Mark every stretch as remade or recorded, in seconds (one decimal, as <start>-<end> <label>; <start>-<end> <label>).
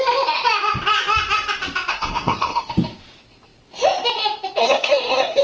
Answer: 0.0-1.9 recorded; 1.9-2.7 remade; 2.7-4.6 recorded; 4.6-5.4 remade